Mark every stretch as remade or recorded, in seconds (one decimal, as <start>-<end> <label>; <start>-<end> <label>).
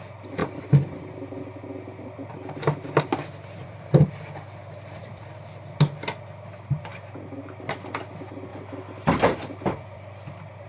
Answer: 0.0-0.4 recorded; 0.4-2.3 remade; 2.3-3.6 recorded; 3.6-5.2 remade; 5.2-8.5 recorded; 8.5-10.7 remade